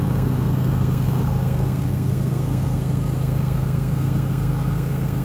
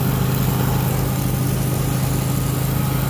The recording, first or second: second